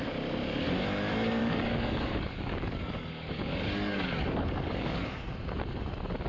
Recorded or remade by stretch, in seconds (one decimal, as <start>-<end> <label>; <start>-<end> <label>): 0.0-1.4 recorded; 1.4-5.2 remade; 5.2-6.3 recorded